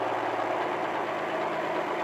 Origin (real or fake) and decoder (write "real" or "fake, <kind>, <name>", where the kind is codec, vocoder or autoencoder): real